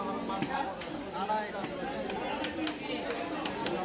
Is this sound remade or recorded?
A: recorded